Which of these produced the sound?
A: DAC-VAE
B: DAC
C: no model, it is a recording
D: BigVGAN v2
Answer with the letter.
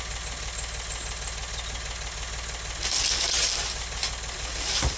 C